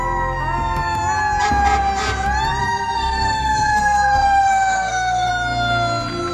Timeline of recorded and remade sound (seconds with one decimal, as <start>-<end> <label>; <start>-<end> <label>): 0.0-2.6 recorded; 2.6-5.3 remade; 5.3-6.3 recorded